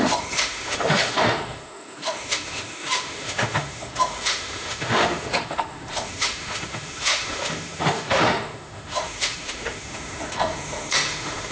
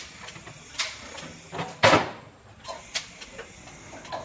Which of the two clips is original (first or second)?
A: second